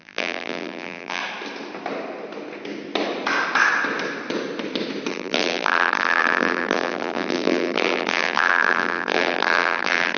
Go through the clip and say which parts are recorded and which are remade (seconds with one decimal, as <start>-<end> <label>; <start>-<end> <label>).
0.0-1.2 remade; 1.2-5.1 recorded; 5.1-10.2 remade